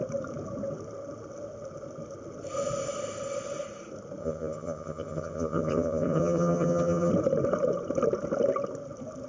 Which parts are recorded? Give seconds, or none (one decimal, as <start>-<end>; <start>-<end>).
0.0-4.2; 7.1-9.3